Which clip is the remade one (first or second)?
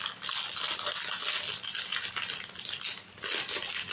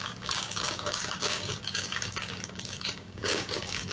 second